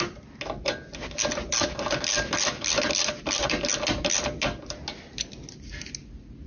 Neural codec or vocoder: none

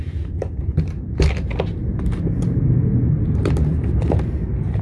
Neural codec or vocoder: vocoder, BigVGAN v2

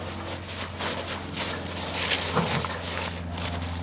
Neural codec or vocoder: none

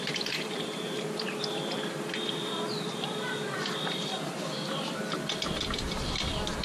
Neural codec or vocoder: vocoder, BigVGAN v2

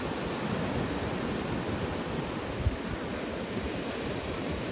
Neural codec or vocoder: none